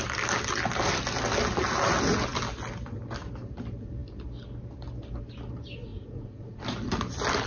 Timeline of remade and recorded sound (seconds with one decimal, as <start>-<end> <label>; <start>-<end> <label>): 0.0-5.9 recorded; 5.9-6.6 remade; 6.6-7.5 recorded